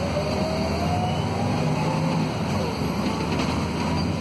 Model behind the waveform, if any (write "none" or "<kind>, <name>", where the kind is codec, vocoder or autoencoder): none